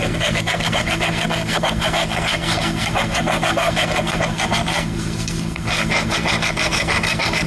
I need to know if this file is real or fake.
fake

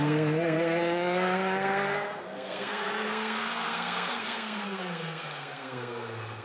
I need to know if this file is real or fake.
fake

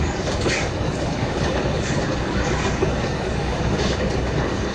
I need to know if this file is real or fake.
fake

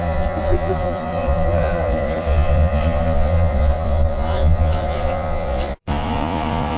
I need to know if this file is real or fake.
fake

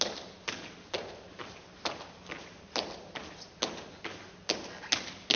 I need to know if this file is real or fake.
real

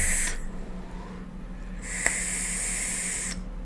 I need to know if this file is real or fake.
real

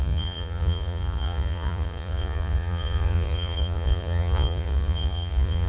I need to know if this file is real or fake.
fake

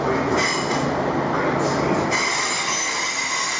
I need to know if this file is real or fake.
real